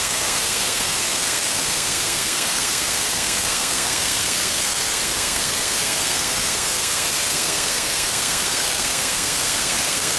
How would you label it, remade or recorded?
remade